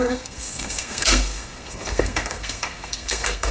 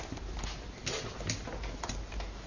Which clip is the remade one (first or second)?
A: first